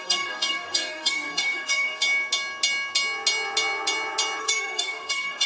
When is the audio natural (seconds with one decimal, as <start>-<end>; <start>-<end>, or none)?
2.0-4.4